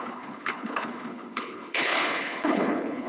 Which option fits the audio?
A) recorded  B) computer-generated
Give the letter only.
B